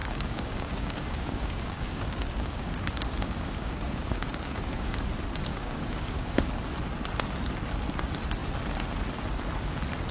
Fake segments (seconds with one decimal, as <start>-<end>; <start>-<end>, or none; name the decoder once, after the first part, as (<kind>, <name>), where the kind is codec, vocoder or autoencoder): 0.0-5.0 (codec, DAC); 5.5-6.5